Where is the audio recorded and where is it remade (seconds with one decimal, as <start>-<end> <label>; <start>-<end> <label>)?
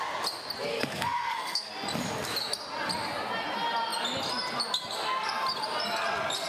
0.0-0.7 recorded; 0.7-1.7 remade; 1.7-6.5 recorded